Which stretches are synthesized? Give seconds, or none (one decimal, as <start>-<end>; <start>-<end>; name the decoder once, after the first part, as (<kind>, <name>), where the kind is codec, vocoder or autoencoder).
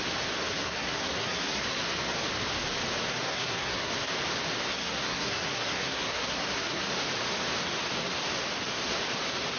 0.5-1.8 (codec, SNAC); 3.1-3.9; 4.7-6.9